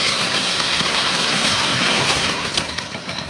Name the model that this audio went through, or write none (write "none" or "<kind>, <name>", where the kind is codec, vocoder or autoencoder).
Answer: codec, SNAC